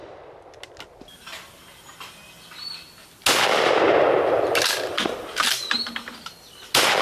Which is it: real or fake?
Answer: real